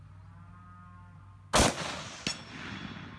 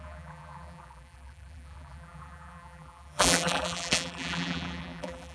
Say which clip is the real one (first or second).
first